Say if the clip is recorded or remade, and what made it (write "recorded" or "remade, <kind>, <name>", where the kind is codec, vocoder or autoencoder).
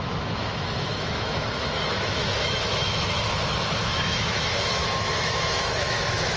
remade, autoencoder, DAC-VAE